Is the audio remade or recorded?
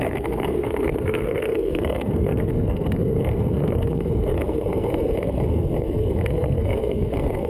remade